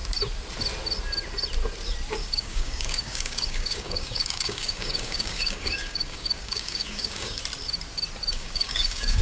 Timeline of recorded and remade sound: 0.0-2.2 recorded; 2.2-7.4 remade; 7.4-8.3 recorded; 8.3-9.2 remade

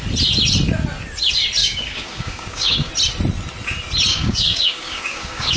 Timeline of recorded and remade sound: 0.0-1.6 recorded; 1.6-2.9 remade; 2.9-4.1 recorded; 4.1-5.6 remade